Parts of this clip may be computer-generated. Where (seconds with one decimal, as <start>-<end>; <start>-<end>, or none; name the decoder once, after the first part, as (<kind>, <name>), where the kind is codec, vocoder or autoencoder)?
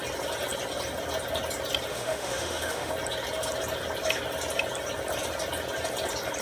1.9-2.9 (autoencoder, DAC-VAE)